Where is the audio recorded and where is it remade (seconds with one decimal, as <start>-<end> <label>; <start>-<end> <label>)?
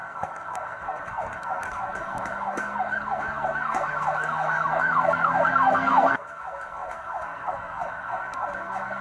0.0-9.0 remade